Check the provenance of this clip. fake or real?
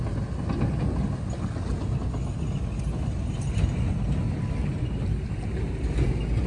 real